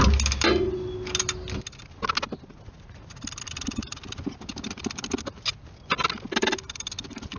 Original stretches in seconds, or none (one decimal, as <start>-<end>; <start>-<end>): 0.0-7.4